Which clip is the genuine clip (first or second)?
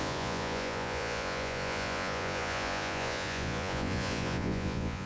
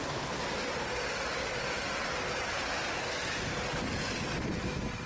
second